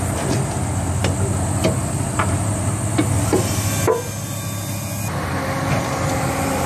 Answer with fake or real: real